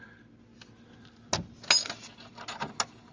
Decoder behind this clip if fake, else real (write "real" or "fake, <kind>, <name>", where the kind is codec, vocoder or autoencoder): real